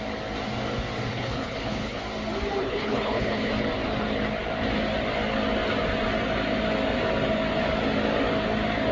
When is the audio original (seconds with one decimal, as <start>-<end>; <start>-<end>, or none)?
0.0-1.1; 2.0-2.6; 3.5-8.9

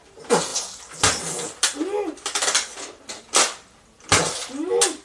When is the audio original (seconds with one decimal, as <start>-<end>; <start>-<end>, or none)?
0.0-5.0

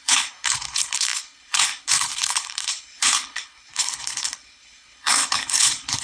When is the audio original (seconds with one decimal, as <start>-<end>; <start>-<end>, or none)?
none

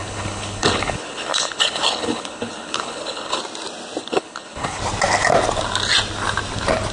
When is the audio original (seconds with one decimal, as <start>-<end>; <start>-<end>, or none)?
3.4-4.0; 4.8-6.9

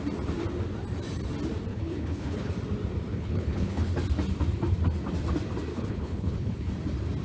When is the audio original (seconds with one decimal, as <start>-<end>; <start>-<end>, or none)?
0.0-1.7; 2.5-3.1; 3.9-5.7; 6.7-7.2

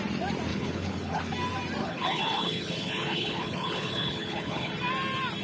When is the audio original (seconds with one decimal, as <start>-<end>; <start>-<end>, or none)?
0.0-0.5; 1.2-1.8; 4.7-5.4